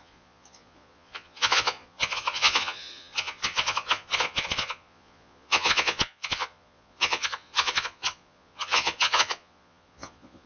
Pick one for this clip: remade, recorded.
remade